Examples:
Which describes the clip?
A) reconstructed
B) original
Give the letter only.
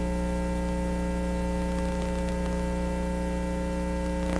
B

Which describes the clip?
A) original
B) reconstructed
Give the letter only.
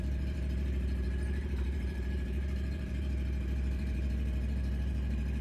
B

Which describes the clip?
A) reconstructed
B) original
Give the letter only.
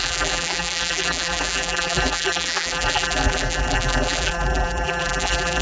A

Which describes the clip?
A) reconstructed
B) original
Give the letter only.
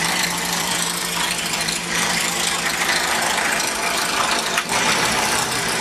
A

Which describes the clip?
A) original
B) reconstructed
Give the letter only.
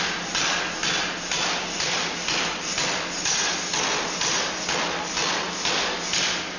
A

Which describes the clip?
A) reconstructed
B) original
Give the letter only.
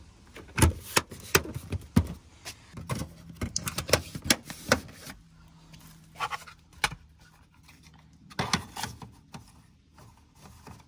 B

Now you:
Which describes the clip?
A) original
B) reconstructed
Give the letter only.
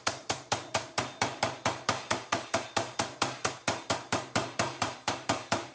B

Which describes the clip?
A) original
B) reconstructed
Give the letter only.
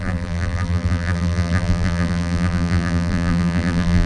B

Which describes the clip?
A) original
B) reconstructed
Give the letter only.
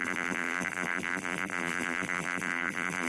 B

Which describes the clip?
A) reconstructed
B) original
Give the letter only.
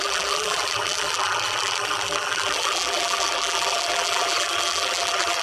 A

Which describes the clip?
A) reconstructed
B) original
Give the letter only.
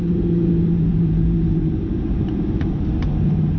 A